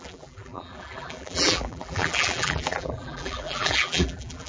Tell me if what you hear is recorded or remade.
remade